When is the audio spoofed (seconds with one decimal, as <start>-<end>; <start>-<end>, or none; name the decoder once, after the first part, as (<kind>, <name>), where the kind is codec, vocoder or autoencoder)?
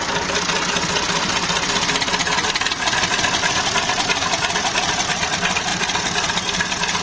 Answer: none